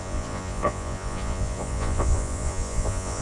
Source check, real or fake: fake